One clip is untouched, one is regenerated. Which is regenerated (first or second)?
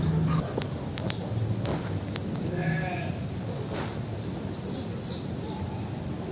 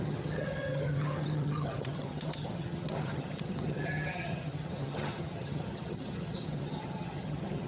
second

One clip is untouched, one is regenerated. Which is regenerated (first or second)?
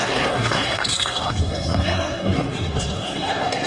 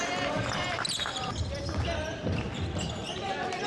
first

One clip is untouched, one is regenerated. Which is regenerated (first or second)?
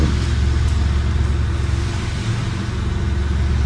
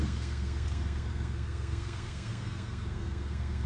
second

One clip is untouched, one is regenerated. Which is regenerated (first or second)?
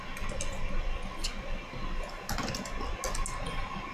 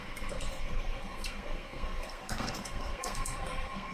second